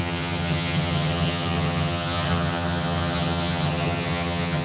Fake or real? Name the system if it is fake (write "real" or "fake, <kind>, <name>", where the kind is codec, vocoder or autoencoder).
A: fake, vocoder, HiFi-GAN